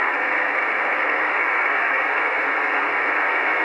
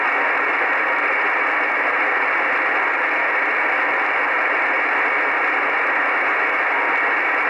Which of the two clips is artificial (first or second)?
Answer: first